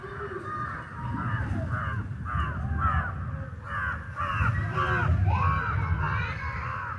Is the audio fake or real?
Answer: real